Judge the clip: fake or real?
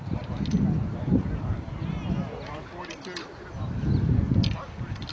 real